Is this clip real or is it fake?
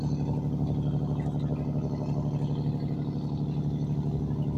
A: real